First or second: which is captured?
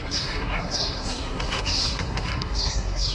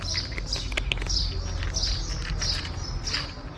second